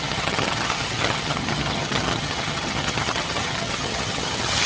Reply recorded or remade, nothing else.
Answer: remade